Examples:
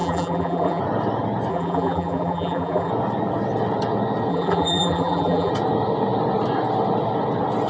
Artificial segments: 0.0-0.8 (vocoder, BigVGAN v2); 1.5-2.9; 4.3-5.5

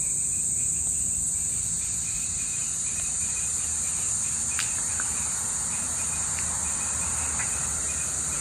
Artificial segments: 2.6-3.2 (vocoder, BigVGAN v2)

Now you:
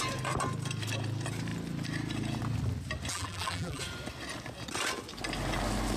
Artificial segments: 3.1-3.8 (vocoder, BigVGAN v2)

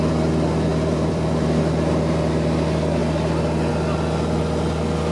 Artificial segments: 0.7-1.6 (vocoder, BigVGAN v2)